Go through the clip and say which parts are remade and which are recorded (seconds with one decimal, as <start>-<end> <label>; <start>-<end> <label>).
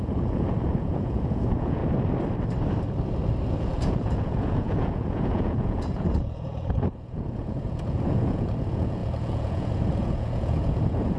0.0-1.8 remade; 1.8-3.5 recorded; 3.5-11.2 remade